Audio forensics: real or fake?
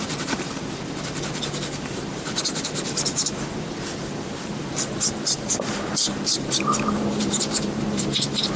fake